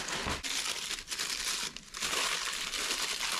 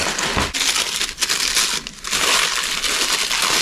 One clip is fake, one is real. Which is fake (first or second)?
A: first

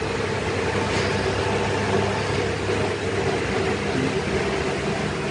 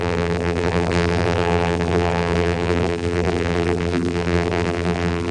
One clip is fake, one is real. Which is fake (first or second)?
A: second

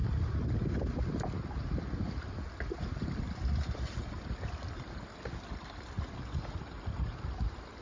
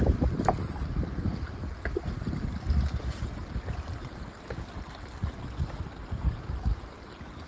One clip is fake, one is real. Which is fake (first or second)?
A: second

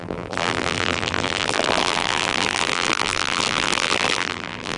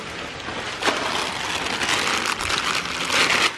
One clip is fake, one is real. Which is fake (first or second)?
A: first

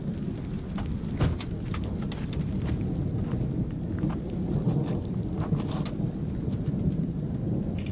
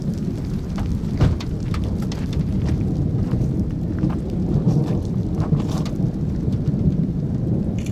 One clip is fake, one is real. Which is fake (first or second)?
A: second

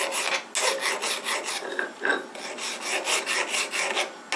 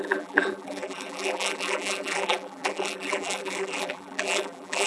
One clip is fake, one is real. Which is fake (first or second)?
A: second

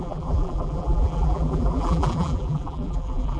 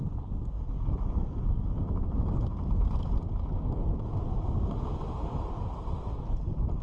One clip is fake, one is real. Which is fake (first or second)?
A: first